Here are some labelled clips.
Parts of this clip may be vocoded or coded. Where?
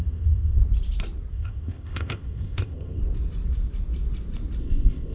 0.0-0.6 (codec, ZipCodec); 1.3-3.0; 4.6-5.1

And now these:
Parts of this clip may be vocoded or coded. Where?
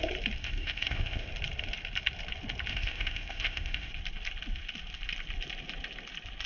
0.4-1.3 (codec, ZipCodec); 2.7-3.9